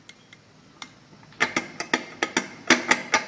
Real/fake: real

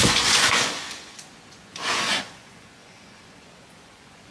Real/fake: fake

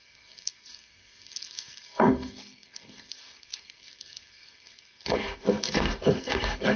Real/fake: fake